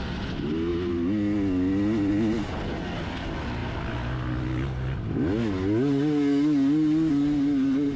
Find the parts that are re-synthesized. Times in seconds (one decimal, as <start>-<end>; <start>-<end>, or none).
none